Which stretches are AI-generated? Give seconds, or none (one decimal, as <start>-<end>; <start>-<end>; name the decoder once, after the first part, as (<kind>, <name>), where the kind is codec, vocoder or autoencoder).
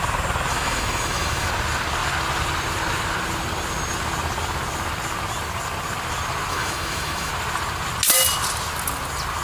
0.5-1.5 (autoencoder, DAC-VAE); 6.5-7.3